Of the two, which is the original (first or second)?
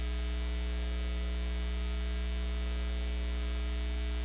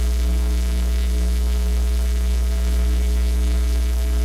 first